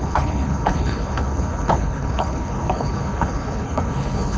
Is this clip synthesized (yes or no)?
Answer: yes